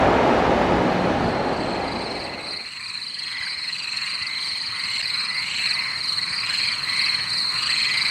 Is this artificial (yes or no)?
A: no